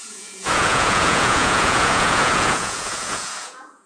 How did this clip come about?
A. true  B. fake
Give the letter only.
B